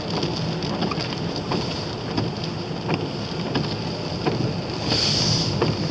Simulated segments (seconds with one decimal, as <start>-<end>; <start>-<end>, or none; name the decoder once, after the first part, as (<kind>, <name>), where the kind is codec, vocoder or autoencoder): none